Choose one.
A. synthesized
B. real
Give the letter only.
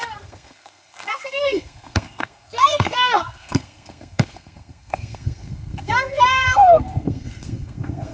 A